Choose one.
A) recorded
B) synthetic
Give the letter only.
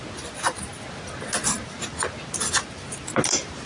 A